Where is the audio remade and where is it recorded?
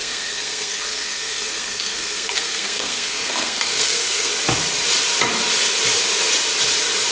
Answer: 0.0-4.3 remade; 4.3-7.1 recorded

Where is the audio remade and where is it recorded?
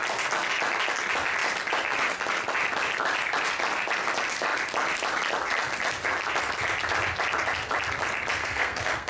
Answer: 0.0-8.4 recorded; 8.4-9.1 remade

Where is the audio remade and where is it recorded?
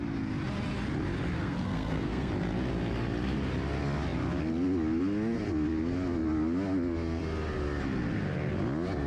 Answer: 0.0-1.4 recorded; 1.4-2.3 remade; 2.3-9.1 recorded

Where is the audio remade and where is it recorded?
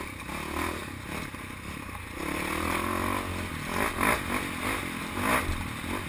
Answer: 0.0-6.1 recorded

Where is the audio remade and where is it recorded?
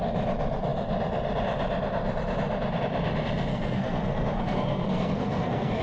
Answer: 0.0-3.5 recorded; 3.5-5.8 remade